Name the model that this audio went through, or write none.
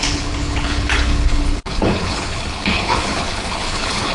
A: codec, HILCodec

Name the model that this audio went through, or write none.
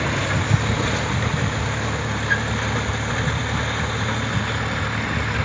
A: none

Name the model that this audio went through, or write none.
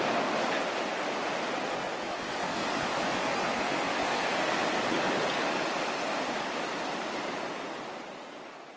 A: none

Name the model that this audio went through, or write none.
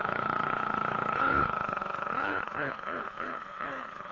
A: codec, HILCodec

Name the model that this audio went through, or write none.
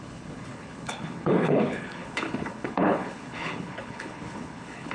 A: codec, HILCodec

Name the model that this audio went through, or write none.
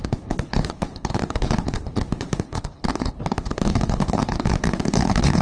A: codec, HILCodec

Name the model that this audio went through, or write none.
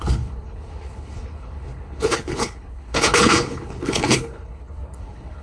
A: codec, HILCodec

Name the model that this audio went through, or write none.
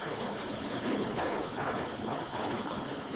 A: codec, HILCodec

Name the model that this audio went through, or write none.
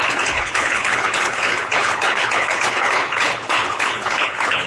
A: codec, HILCodec